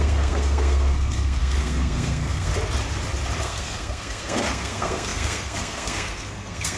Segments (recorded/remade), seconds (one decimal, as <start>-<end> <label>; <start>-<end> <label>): 0.0-2.5 remade; 2.5-3.4 recorded; 3.4-6.8 remade